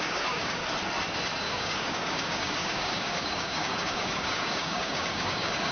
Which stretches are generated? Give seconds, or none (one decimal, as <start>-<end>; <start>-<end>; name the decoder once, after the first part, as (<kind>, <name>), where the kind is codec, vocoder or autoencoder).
0.0-0.6 (codec, DAC); 1.4-5.7